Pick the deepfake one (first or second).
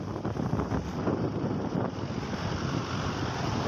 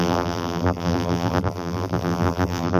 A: second